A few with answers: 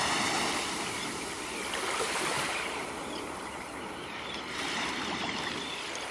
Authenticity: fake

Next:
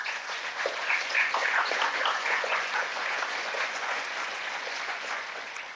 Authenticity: fake